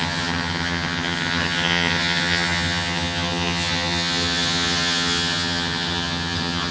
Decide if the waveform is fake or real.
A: fake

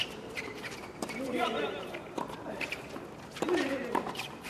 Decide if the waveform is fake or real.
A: fake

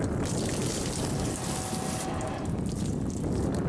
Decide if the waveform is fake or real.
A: real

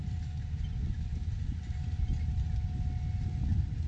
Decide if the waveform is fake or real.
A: real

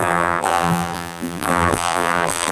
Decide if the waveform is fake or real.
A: fake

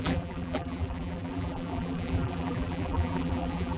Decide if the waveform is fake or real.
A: fake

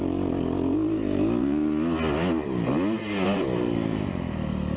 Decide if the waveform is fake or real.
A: real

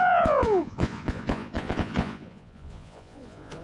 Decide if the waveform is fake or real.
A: fake